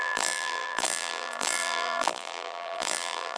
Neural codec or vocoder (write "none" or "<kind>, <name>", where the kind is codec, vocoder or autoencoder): vocoder, BigVGAN v2